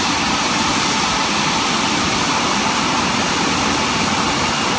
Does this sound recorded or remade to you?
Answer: recorded